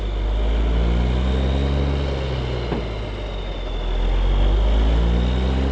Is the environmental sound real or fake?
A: real